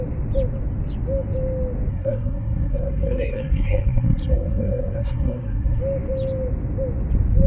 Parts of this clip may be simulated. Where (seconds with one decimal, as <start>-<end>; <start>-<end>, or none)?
1.9-5.8